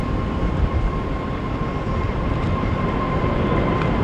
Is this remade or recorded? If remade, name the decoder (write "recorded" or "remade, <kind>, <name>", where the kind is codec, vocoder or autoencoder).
remade, vocoder, BigVGAN v2